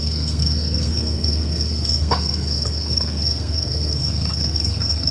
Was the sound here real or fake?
fake